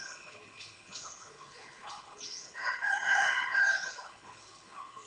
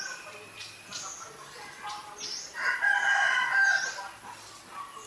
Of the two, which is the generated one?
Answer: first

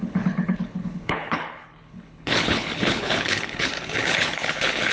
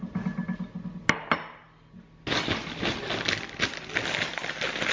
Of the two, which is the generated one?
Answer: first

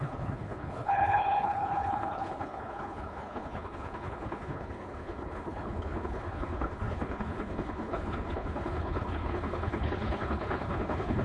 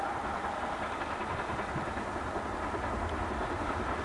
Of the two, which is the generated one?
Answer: first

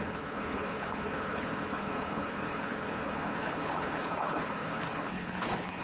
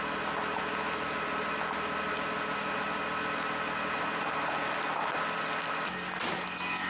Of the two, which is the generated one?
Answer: first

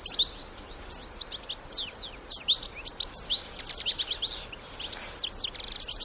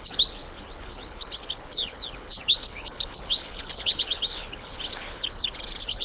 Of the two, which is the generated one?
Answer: second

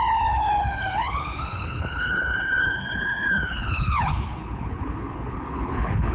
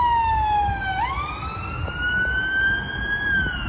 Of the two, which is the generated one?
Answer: first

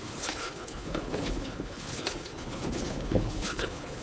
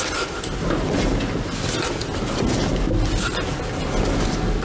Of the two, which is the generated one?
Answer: first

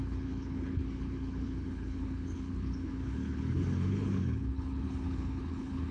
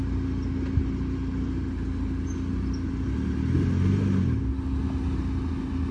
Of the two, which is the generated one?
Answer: first